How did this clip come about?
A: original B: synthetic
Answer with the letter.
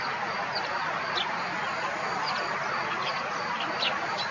A